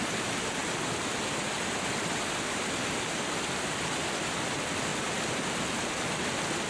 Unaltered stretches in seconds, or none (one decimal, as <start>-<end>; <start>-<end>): 0.0-6.7